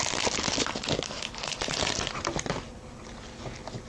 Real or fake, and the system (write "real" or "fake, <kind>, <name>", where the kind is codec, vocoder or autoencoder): real